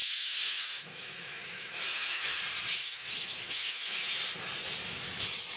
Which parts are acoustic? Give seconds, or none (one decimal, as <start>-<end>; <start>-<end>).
2.4-2.8; 4.2-5.6